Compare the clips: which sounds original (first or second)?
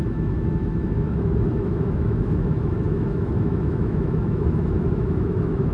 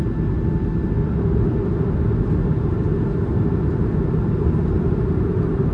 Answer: second